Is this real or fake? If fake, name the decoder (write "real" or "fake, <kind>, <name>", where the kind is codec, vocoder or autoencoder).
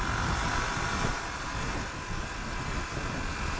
real